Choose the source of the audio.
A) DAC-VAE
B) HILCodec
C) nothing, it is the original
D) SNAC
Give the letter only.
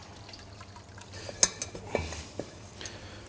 C